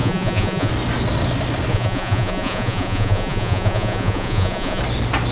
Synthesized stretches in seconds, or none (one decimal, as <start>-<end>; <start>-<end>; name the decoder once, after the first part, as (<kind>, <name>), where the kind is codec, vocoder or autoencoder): 0.0-0.7 (vocoder, Vocos); 1.7-4.8